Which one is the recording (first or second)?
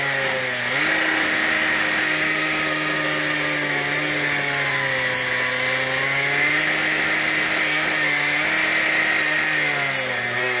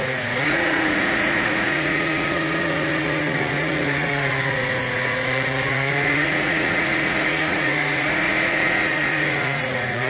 first